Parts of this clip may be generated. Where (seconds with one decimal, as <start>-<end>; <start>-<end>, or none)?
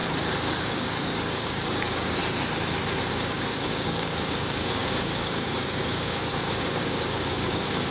0.6-2.2; 3.1-7.9